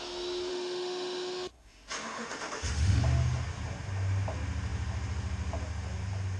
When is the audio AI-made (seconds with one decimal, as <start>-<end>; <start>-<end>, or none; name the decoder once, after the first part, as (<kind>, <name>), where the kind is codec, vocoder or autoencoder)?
0.5-3.0 (autoencoder, DAC-VAE)